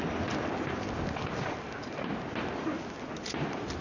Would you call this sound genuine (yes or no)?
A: yes